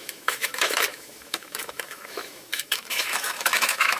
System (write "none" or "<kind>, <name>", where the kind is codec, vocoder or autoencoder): autoencoder, DAC-VAE